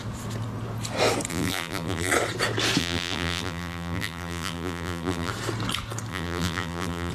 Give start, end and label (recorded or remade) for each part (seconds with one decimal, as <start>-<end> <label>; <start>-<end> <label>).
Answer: 0.0-1.3 recorded; 1.3-2.1 remade; 2.1-2.8 recorded; 2.8-5.3 remade; 5.3-6.1 recorded; 6.1-7.1 remade